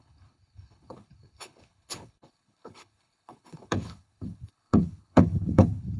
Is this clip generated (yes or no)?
yes